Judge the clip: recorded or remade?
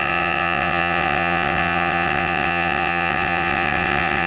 remade